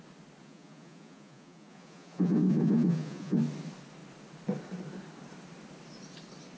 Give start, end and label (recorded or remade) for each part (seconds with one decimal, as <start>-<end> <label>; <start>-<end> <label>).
0.0-0.4 recorded; 0.4-3.4 remade; 3.4-6.6 recorded